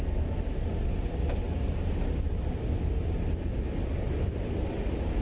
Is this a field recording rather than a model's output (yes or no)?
yes